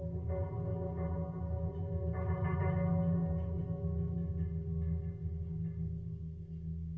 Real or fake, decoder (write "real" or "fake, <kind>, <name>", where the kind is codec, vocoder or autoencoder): real